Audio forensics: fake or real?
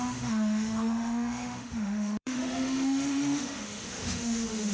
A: fake